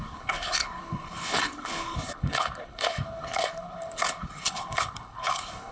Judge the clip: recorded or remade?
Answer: remade